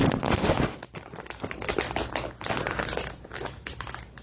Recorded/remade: recorded